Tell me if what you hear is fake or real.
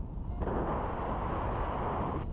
real